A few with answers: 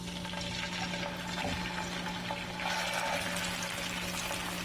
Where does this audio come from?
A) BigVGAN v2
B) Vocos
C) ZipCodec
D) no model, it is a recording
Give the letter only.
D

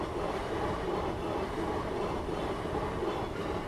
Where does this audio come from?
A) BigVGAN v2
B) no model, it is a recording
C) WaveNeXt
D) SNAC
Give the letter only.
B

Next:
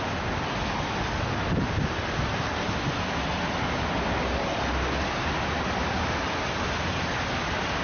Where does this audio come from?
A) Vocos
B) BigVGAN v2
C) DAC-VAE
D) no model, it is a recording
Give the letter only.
D